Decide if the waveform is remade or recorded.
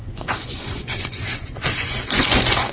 remade